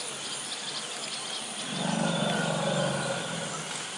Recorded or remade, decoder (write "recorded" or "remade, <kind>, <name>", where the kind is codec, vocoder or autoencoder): recorded